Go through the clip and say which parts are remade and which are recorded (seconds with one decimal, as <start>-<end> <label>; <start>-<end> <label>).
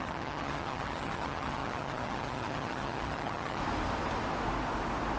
0.0-3.6 remade; 3.6-5.2 recorded